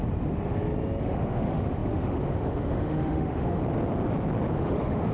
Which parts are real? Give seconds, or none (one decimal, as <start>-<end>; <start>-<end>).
0.0-1.0; 3.6-4.5